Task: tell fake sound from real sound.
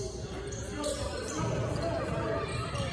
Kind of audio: real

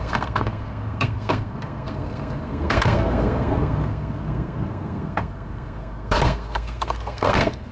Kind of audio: fake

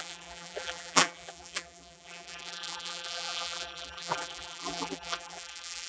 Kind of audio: fake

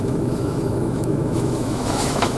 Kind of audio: fake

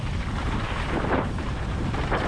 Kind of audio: real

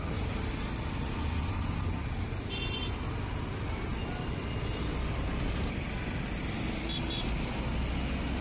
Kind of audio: real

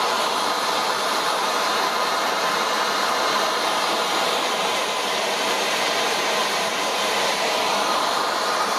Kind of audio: fake